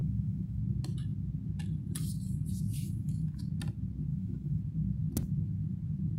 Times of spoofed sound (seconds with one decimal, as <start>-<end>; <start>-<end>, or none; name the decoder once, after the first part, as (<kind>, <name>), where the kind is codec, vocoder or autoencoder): 0.0-0.6 (autoencoder, DAC-VAE); 2.8-3.4; 4.1-4.6